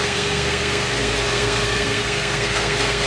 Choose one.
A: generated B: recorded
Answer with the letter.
A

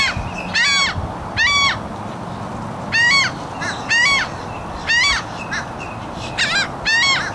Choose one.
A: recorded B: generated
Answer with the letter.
A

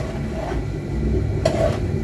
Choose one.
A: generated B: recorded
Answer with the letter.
B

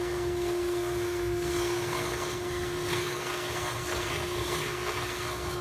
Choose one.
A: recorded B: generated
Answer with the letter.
B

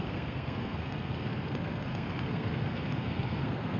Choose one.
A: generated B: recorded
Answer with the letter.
A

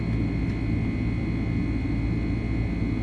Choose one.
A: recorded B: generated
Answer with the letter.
A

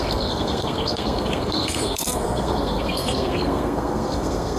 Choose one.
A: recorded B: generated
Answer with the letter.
B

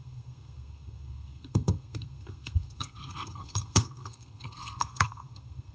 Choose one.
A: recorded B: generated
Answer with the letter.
B